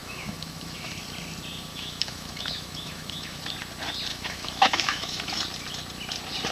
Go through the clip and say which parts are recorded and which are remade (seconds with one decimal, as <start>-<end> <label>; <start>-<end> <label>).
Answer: 0.0-0.9 remade; 0.9-1.7 recorded; 1.7-3.4 remade; 3.4-4.1 recorded; 4.1-5.4 remade; 5.4-6.5 recorded